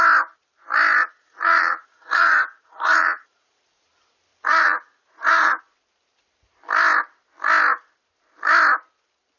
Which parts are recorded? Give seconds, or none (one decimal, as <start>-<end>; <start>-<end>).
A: 0.0-1.0; 3.7-4.3; 5.6-9.4